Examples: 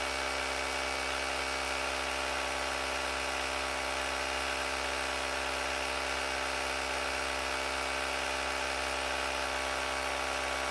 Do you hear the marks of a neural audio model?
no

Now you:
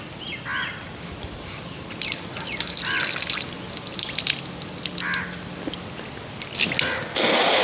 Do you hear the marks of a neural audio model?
no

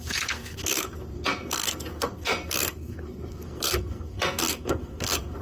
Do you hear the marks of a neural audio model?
yes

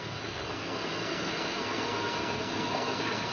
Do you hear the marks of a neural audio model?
yes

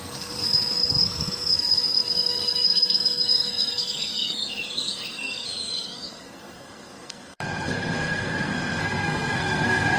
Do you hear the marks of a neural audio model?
yes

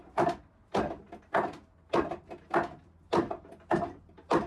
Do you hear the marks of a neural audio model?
no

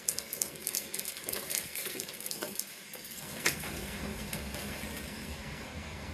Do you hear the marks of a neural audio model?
yes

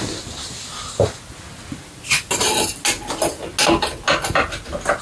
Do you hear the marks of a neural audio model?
no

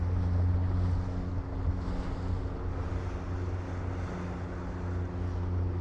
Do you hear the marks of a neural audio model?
no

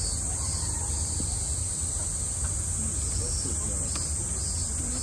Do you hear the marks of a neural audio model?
no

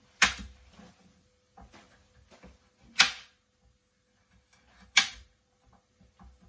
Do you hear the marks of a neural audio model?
no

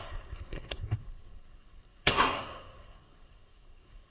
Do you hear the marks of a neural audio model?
yes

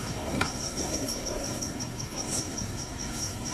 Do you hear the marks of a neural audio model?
yes